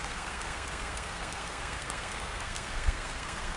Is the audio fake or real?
fake